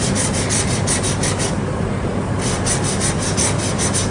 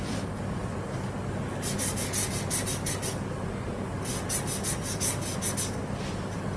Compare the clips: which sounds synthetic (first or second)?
first